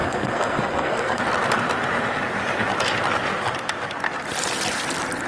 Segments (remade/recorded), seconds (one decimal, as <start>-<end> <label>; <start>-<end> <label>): 0.0-1.2 remade; 1.2-5.3 recorded